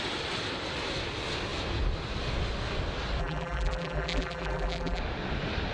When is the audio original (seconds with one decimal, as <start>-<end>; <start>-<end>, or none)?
0.0-3.2; 5.0-5.7